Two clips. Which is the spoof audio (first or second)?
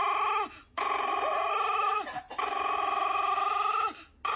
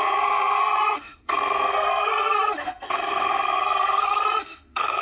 second